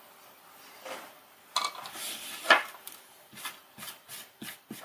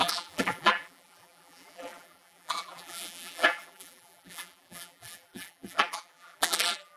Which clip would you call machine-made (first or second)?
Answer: second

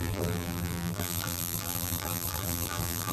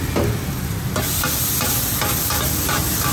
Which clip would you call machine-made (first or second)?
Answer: first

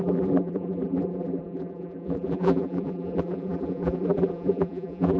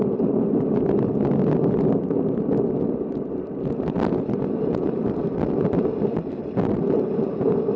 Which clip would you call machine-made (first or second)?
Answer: first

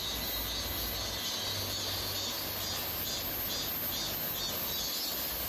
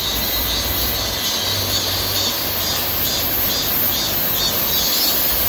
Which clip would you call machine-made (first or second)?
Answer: second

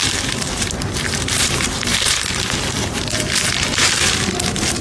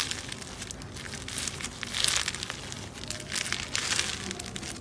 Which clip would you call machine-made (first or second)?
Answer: first